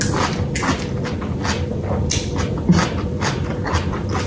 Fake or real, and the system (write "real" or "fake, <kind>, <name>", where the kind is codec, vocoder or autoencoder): real